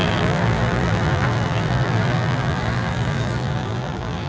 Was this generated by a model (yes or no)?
yes